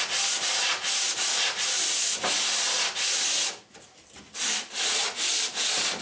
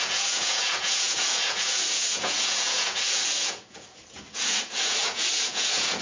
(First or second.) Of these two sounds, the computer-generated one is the second